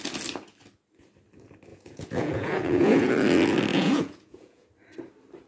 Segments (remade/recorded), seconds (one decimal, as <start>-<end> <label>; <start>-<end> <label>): 0.0-1.7 recorded; 1.7-3.1 remade; 3.1-3.7 recorded; 3.7-4.7 remade; 4.7-5.5 recorded

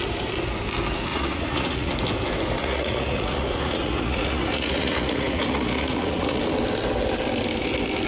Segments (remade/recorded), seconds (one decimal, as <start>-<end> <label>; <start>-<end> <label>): 0.0-1.1 recorded; 1.1-1.9 remade; 1.9-2.6 recorded; 2.6-6.4 remade; 6.4-8.1 recorded

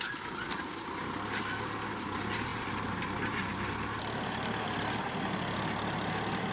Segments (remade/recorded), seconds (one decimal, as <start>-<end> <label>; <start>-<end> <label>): 0.0-6.5 recorded

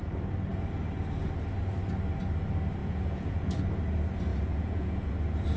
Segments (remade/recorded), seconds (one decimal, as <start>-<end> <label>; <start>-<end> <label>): 0.0-2.8 recorded; 2.8-3.6 remade; 3.6-4.3 recorded; 4.3-5.1 remade; 5.1-5.6 recorded